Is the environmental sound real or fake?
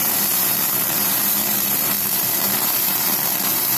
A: fake